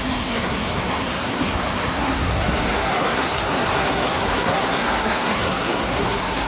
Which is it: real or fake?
fake